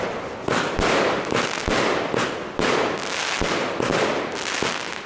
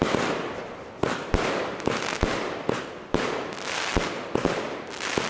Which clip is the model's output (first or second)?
second